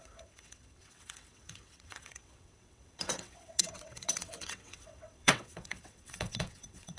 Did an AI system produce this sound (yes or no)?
yes